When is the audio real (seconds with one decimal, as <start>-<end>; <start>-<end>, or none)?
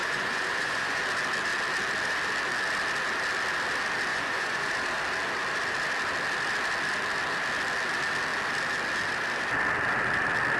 1.0-4.1; 4.7-10.6